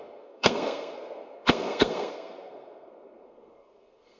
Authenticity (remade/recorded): remade